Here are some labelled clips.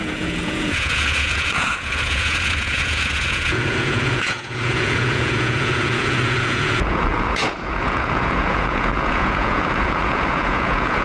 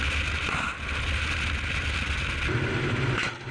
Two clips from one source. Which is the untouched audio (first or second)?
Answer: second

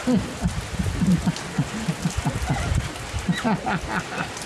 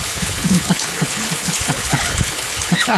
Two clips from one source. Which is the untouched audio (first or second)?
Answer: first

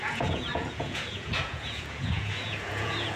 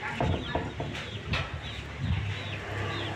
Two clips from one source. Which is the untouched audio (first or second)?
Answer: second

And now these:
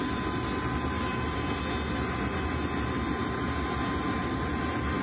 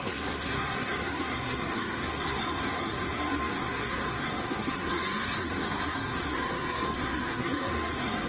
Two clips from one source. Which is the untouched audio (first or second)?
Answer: first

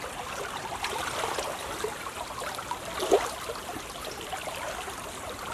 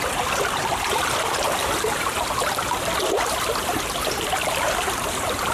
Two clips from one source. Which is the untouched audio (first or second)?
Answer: first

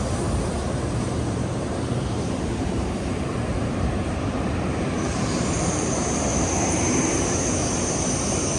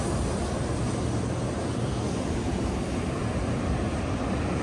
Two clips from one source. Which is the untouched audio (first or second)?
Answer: second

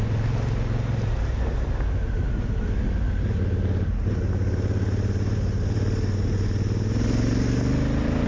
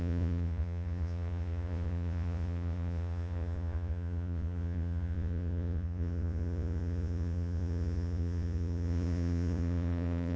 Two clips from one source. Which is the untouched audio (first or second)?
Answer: first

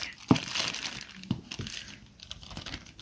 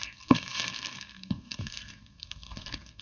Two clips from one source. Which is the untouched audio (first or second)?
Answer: first